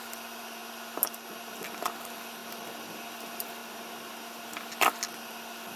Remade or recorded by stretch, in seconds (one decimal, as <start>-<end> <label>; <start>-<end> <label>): 0.0-0.6 remade; 0.6-2.0 recorded; 2.0-2.4 remade; 2.4-2.9 recorded; 2.9-3.6 remade; 3.6-5.2 recorded; 5.2-5.8 remade